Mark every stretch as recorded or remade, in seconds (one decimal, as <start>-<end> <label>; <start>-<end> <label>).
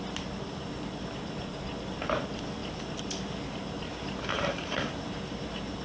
0.0-4.3 recorded; 4.3-4.9 remade; 4.9-5.8 recorded